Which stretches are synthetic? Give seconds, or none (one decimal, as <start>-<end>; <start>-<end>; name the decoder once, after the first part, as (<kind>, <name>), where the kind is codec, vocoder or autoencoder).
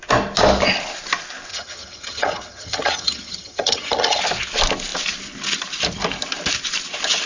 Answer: 1.5-4.2 (vocoder, HiFi-GAN)